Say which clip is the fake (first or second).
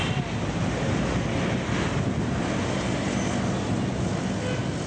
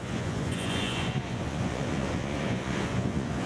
second